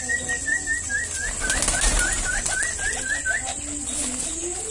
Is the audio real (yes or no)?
yes